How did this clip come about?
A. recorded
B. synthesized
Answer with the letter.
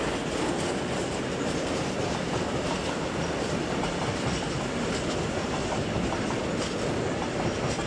A